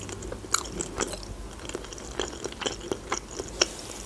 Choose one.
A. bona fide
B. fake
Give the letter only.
A